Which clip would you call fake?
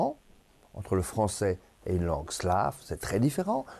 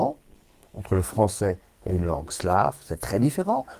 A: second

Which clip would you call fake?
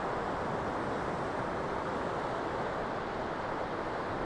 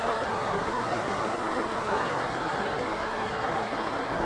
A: second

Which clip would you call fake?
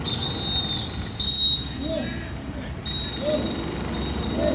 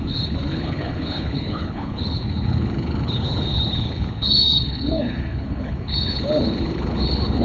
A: second